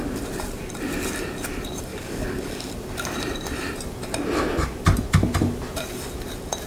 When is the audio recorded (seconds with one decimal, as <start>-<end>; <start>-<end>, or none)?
0.0-1.9; 2.7-6.7